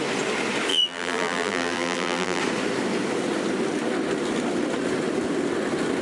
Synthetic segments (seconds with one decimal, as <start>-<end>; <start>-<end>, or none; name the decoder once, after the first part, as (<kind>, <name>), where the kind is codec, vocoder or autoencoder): 0.7-2.4 (vocoder, BigVGAN v2)